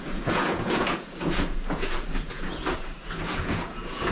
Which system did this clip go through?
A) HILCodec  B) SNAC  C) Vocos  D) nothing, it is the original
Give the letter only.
C